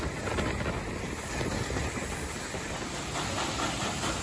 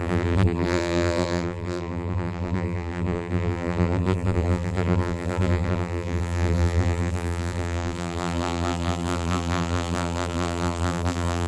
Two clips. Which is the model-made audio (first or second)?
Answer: second